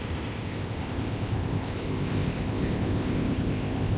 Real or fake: fake